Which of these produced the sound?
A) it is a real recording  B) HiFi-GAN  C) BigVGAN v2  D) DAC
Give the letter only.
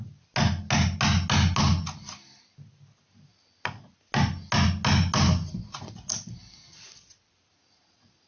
A